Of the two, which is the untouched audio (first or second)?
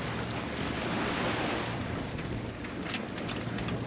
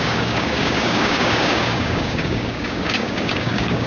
first